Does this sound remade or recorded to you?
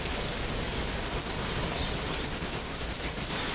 recorded